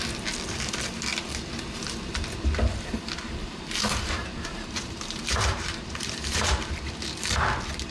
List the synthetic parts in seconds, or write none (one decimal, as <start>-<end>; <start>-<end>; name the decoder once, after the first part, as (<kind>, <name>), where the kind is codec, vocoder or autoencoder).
3.4-6.7 (vocoder, BigVGAN v2)